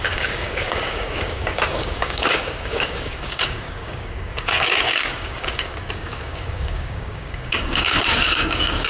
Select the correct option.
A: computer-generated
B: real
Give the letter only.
A